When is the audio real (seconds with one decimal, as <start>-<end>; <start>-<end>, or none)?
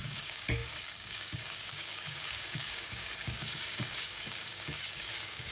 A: none